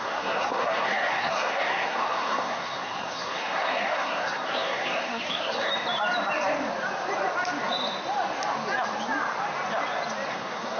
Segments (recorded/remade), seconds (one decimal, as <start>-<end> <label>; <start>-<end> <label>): 0.0-5.7 remade; 5.7-10.3 recorded; 10.3-10.8 remade